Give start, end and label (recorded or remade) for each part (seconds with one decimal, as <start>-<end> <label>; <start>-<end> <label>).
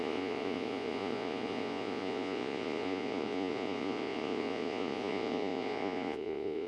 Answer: 0.0-6.7 remade